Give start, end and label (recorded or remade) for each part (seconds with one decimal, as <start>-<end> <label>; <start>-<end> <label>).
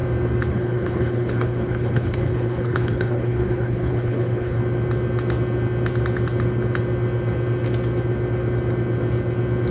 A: 0.0-0.5 recorded; 0.5-4.6 remade; 4.6-9.7 recorded